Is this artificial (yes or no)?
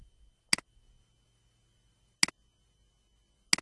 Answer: no